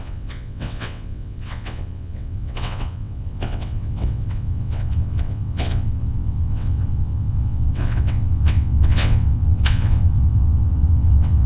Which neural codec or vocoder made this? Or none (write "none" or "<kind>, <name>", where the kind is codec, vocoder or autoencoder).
vocoder, WaveNeXt